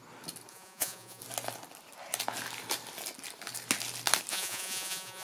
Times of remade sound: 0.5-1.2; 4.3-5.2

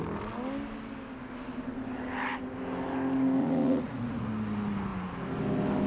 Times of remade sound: 3.4-4.3

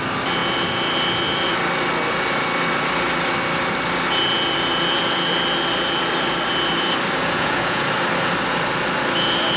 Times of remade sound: 7.2-7.9

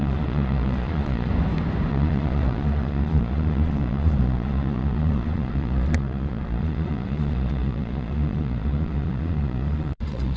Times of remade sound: 0.0-1.3; 1.9-10.4

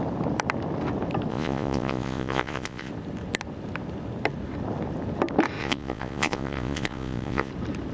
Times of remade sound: 1.3-2.9; 5.6-7.5

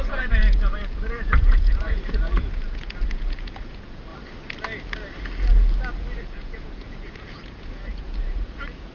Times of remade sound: 0.0-4.1; 6.2-8.9